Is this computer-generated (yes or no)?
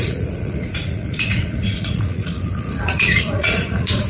yes